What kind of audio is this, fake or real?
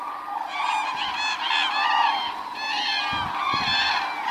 real